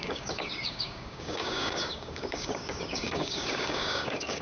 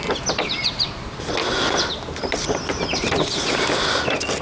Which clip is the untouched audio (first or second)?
second